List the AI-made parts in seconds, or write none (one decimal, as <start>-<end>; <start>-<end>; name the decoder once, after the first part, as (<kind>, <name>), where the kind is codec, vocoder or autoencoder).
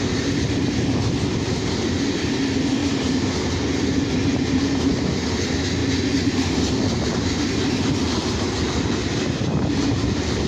2.8-3.3 (vocoder, BigVGAN v2); 4.3-4.9; 9.0-10.5